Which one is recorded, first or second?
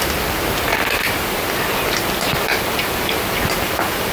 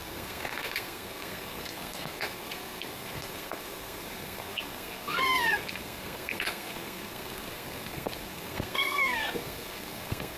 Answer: first